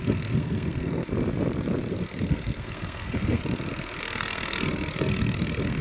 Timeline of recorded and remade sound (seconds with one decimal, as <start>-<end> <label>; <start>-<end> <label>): 0.0-1.0 remade; 1.0-1.9 recorded; 1.9-3.4 remade; 3.4-4.0 recorded; 4.0-5.8 remade